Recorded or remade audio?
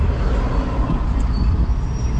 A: recorded